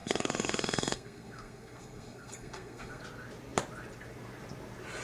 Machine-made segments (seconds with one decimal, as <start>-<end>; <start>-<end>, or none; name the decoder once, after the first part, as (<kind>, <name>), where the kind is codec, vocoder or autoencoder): 0.0-3.0 (codec, SNAC)